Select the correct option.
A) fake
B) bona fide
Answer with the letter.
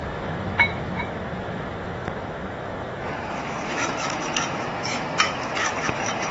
A